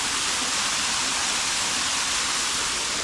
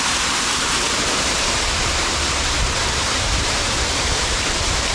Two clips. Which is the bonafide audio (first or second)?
first